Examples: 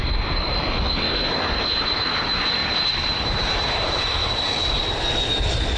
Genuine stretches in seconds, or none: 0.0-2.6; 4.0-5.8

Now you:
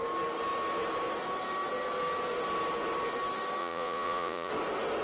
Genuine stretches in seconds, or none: 0.0-3.6; 4.5-5.0